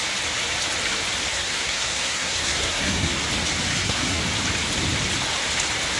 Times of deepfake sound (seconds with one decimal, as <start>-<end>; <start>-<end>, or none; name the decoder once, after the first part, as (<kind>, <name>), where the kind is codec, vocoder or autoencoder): 1.3-3.1 (codec, SNAC); 3.7-4.2